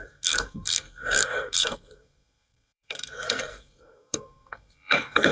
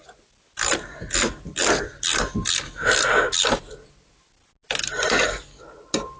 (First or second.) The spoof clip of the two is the first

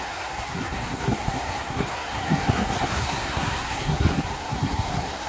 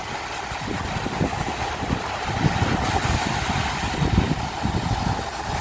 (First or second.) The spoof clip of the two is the first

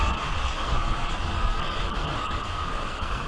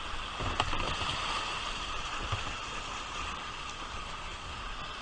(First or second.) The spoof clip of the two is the first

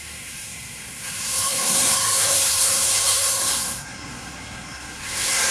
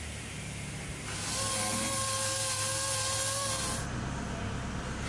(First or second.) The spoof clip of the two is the first